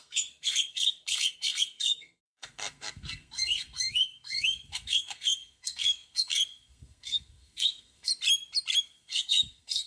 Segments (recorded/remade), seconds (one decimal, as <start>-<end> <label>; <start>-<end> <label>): 0.0-8.1 remade; 8.1-8.8 recorded; 8.8-9.9 remade